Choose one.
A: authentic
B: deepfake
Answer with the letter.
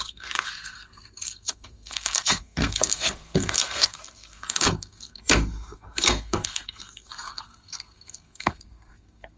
B